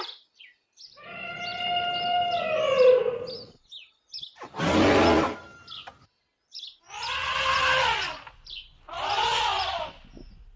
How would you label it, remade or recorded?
recorded